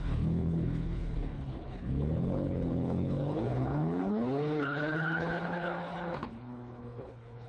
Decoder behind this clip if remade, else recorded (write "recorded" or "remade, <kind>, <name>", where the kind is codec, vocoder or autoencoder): remade, codec, HILCodec